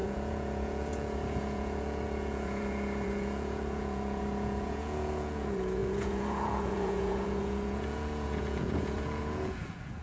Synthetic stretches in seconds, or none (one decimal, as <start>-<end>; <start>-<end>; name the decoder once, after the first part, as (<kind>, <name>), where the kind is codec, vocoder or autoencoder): 0.0-10.0 (vocoder, Vocos)